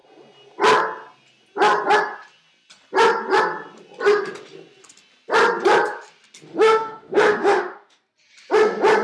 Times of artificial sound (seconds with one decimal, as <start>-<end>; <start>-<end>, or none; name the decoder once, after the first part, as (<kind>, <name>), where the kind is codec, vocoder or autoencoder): 6.5-8.0 (autoencoder, DAC-VAE)